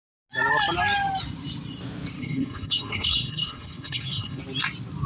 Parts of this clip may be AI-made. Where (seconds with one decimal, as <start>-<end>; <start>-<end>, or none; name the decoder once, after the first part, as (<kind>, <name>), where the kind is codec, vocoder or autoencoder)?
2.2-4.4 (codec, HILCodec)

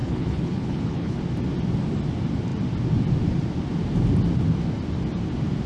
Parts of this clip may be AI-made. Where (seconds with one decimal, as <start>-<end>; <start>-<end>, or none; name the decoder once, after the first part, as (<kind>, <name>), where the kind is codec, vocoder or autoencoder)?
0.0-1.2 (codec, HILCodec)